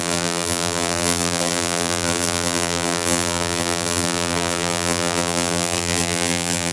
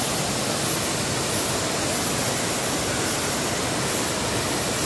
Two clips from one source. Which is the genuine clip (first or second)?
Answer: second